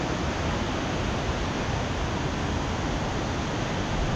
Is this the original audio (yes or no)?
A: yes